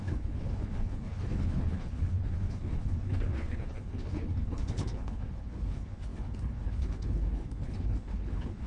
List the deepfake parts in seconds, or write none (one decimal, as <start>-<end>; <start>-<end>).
0.0-8.7